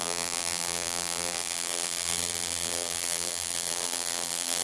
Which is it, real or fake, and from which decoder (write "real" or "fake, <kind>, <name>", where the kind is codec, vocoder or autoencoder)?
fake, vocoder, BigVGAN v2